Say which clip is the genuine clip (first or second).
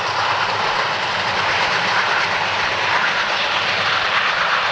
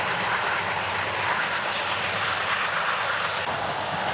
second